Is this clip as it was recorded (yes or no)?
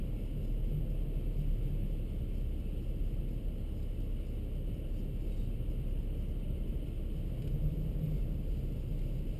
yes